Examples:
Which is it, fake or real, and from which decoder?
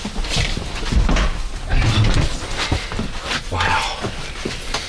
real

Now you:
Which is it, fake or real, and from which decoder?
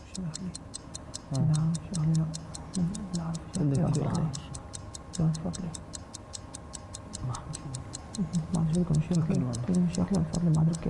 real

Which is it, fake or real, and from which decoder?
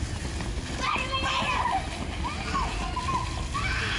real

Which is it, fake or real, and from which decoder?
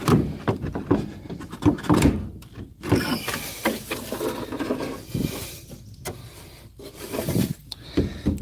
real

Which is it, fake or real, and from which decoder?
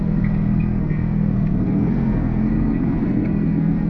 fake, codec, SNAC